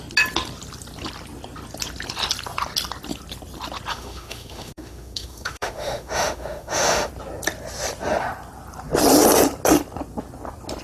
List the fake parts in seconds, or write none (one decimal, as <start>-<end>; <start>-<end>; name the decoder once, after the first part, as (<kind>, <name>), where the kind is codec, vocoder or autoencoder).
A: 3.9-7.1 (autoencoder, DAC-VAE)